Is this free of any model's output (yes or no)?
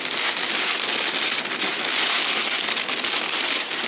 yes